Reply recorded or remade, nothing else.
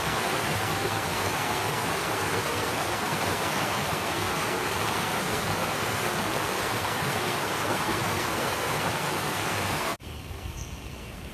remade